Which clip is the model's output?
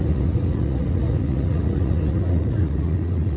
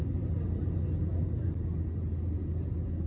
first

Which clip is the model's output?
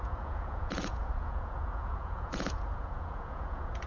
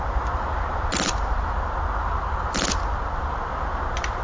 first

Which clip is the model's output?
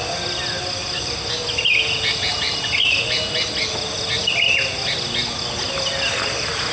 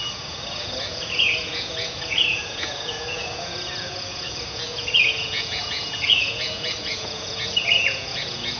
second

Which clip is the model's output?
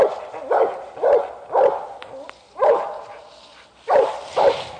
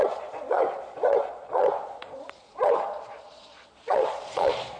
second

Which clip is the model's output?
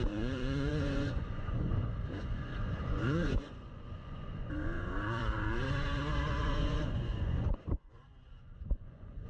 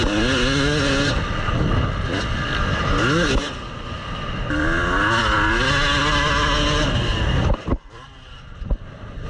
first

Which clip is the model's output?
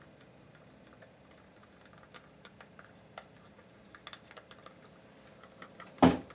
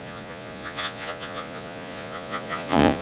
second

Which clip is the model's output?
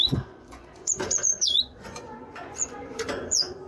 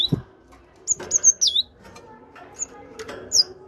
first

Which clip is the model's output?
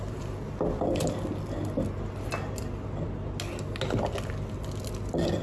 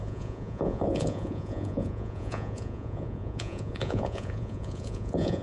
second